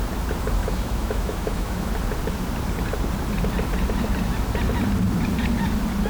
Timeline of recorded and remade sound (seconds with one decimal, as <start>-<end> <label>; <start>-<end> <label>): 0.0-0.6 recorded; 0.6-1.9 remade; 1.9-6.1 recorded